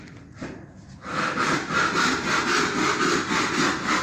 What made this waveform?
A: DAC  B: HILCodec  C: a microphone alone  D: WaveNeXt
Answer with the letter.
C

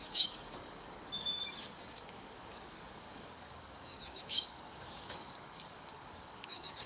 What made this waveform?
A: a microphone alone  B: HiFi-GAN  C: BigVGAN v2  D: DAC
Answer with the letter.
D